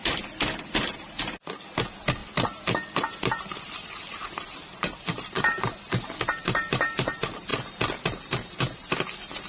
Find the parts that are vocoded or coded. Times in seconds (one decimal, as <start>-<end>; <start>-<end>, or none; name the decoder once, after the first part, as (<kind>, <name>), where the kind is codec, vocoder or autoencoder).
2.2-6.7 (vocoder, BigVGAN v2)